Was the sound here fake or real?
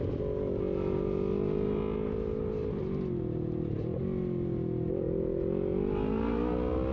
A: real